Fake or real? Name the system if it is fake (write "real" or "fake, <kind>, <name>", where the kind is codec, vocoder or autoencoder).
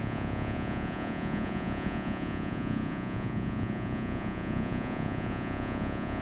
fake, vocoder, Vocos